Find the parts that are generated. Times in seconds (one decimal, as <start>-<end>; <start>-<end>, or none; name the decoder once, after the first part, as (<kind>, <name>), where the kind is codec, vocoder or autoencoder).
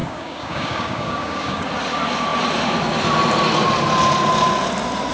0.0-1.7 (codec, DAC)